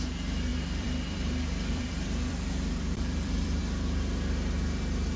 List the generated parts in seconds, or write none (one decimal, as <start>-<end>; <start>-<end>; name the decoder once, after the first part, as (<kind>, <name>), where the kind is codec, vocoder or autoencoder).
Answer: 0.5-3.6 (vocoder, BigVGAN v2)